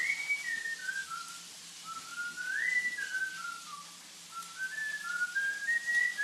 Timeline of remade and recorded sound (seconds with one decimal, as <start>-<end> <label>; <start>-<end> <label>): 0.0-6.2 recorded